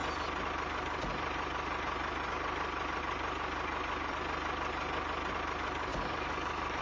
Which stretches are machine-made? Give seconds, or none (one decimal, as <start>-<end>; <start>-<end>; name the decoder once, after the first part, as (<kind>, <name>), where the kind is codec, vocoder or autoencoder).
5.9-6.8 (codec, DAC)